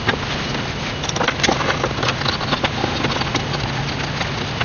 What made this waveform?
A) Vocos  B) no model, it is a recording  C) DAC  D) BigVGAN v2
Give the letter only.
B